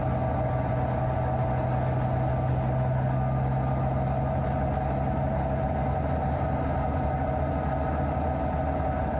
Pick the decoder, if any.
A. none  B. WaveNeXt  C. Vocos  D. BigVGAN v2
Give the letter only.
A